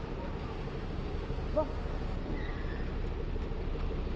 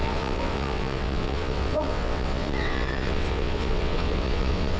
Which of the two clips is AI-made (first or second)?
second